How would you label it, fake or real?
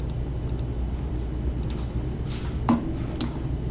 real